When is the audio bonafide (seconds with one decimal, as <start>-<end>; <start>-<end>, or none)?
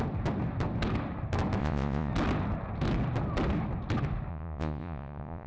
0.0-1.6; 2.1-4.3